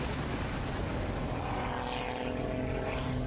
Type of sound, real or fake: real